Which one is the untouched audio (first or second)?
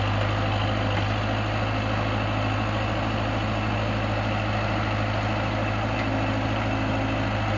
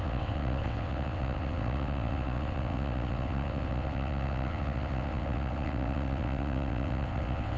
first